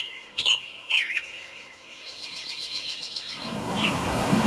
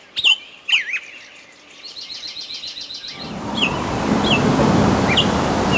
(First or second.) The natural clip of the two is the second